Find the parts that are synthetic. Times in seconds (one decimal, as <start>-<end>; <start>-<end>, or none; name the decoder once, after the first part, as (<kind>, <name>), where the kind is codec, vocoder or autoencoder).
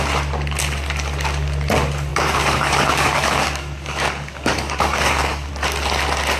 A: 2.1-5.5 (codec, DAC)